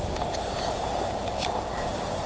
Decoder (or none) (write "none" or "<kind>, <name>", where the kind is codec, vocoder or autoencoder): vocoder, BigVGAN v2